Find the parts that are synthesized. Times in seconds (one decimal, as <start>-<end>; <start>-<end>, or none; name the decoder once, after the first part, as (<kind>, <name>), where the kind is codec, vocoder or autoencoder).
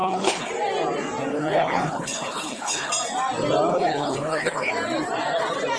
0.0-0.5 (codec, HILCodec); 1.3-2.9; 3.7-4.7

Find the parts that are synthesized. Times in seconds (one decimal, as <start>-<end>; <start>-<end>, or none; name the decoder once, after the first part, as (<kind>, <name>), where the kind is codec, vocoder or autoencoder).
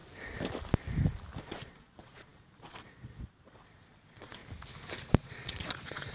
1.4-4.4 (vocoder, Vocos); 5.0-6.1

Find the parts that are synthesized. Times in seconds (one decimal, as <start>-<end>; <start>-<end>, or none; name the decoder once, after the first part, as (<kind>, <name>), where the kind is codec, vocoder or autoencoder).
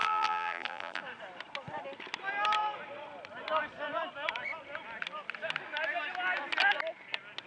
0.0-1.0 (vocoder, BigVGAN v2)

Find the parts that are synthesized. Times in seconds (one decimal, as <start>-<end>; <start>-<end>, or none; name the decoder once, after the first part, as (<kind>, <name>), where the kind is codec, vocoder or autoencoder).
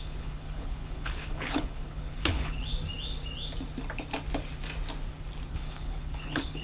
0.0-2.7 (codec, HILCodec); 5.5-6.6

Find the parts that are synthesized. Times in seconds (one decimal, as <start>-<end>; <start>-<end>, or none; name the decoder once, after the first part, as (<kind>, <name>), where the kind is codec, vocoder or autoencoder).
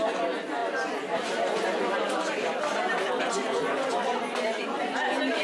none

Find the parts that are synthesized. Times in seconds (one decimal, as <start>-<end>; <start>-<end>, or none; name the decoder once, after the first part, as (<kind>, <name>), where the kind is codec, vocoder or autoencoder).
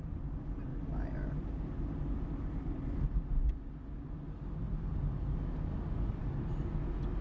none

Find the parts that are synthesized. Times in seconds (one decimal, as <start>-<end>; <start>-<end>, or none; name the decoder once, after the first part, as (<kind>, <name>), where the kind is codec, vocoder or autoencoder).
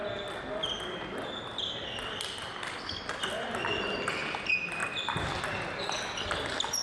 none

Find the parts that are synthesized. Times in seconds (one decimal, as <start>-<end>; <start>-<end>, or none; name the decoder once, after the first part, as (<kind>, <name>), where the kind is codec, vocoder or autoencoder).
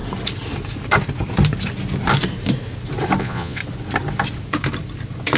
3.2-3.6 (vocoder, Vocos)